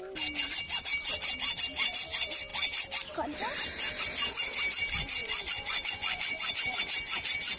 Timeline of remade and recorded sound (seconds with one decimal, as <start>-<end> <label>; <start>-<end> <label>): 0.0-5.2 recorded; 5.2-6.8 remade; 6.8-7.6 recorded